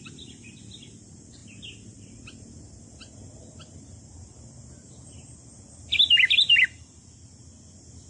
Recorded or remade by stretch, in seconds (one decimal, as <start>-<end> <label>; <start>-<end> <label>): 0.0-8.1 recorded